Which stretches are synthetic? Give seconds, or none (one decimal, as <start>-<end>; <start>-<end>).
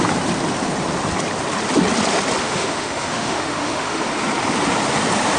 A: 2.4-4.0